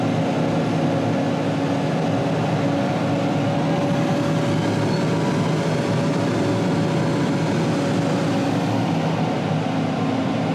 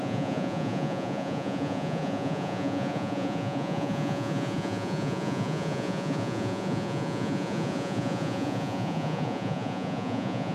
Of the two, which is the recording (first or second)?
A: first